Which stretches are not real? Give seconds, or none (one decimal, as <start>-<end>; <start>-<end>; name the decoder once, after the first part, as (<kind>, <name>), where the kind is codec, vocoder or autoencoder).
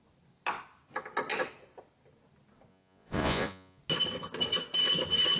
2.7-3.8 (vocoder, Vocos)